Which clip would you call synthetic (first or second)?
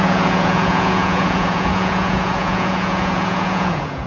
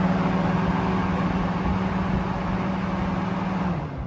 first